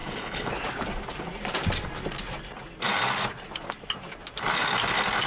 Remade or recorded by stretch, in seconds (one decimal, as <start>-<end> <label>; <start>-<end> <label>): 0.0-0.5 remade; 0.5-5.3 recorded